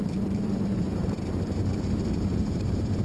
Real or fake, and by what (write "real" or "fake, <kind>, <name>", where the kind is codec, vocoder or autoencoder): fake, vocoder, BigVGAN v2